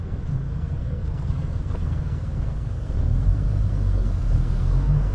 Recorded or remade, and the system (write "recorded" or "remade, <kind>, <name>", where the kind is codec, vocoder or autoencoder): remade, codec, SNAC